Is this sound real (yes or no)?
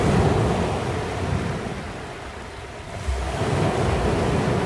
yes